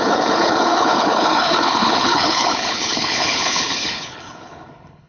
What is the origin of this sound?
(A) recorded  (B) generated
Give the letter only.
B